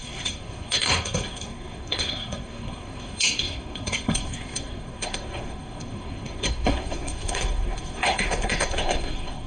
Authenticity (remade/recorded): remade